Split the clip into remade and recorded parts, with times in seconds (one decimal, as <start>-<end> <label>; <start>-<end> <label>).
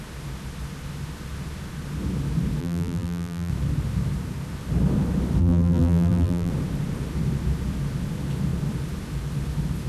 0.0-2.6 recorded; 2.6-3.5 remade; 3.5-5.4 recorded; 5.4-6.5 remade; 6.5-9.9 recorded